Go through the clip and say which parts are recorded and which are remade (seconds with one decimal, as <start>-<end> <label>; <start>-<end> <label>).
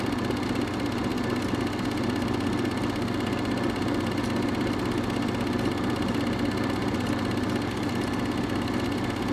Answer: 0.0-9.3 recorded